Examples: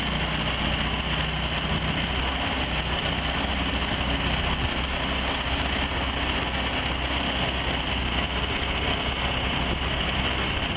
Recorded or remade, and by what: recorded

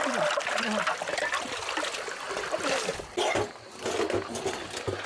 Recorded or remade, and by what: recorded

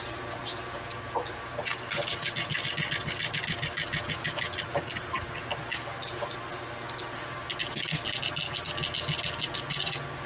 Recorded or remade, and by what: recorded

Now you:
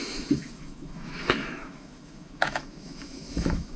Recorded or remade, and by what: remade, autoencoder, DAC-VAE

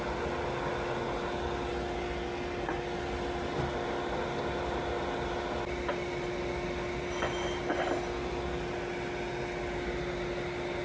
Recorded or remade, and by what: recorded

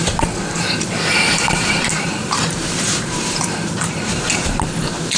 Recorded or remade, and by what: remade, vocoder, BigVGAN v2